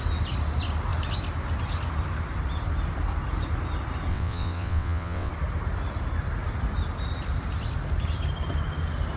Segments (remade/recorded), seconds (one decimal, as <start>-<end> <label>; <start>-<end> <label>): 0.0-4.1 recorded; 4.1-5.3 remade; 5.3-9.2 recorded